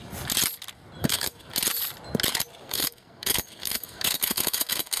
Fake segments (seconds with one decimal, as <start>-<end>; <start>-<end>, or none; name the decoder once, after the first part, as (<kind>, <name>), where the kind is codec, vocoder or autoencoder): 1.0-1.5 (codec, SNAC); 2.6-5.0